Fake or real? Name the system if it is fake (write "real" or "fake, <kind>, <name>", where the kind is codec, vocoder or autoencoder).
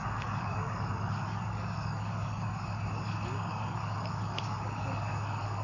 fake, codec, DAC